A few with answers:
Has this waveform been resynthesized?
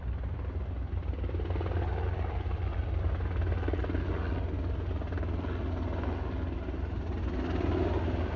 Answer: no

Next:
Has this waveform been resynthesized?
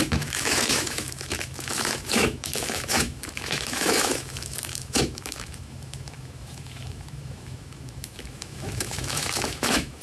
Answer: yes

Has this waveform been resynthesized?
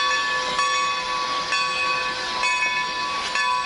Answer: no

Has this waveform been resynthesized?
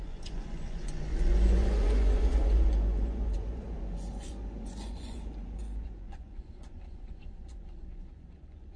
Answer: yes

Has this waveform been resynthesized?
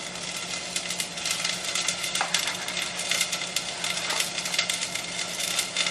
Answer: no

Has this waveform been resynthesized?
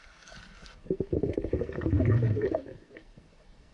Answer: yes